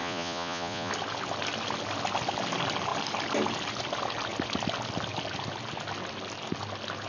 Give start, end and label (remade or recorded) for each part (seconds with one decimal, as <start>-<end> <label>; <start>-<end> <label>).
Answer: 0.0-0.9 remade; 0.9-7.1 recorded